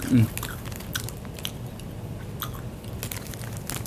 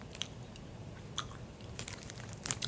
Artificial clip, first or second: second